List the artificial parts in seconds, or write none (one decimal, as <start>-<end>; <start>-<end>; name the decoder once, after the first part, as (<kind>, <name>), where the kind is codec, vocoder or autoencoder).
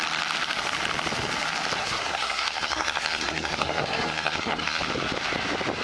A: 1.8-4.8 (codec, SNAC)